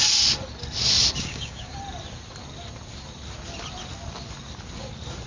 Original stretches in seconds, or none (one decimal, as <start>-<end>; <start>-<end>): 0.0-1.2; 1.7-5.3